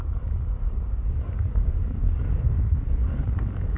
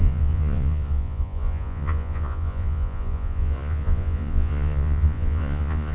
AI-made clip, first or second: second